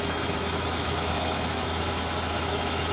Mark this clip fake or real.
fake